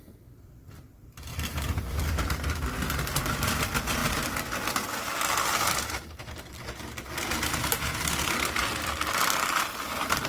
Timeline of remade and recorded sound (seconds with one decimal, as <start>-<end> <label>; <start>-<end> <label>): 0.0-4.0 remade; 4.0-8.2 recorded; 8.2-10.3 remade